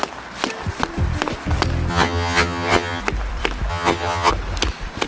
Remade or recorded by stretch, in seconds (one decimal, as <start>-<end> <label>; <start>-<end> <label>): 0.0-1.9 recorded; 1.9-3.0 remade; 3.0-3.7 recorded; 3.7-4.3 remade; 4.3-5.1 recorded